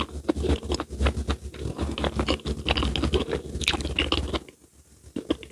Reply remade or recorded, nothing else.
recorded